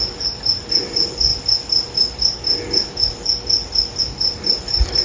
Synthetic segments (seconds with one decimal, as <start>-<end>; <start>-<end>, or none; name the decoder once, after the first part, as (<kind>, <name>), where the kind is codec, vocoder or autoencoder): none